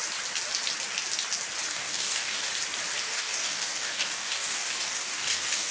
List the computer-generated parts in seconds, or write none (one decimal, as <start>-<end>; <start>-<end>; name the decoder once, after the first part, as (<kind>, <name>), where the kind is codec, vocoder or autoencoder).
1.7-2.5 (codec, DAC); 3.0-5.7